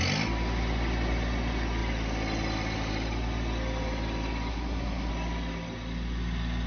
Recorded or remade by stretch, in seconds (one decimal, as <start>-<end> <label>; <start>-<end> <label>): 0.0-4.5 recorded; 4.5-5.1 remade; 5.1-6.7 recorded